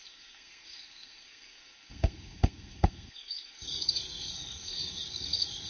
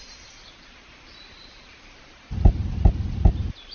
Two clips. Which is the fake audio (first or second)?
first